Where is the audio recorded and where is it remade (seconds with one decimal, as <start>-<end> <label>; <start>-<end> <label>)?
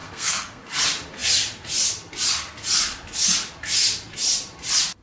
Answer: 0.0-0.6 remade; 0.6-5.0 recorded